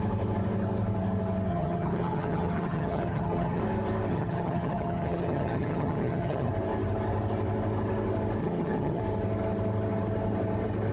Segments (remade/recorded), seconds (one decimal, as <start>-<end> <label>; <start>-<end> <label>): 0.0-1.5 recorded; 1.5-3.6 remade; 3.6-4.1 recorded; 4.1-6.5 remade; 6.5-8.4 recorded; 8.4-9.0 remade; 9.0-10.9 recorded